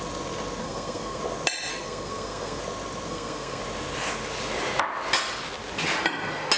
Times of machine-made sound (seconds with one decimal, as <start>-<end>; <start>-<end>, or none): 0.6-1.2; 1.7-2.6; 3.1-3.6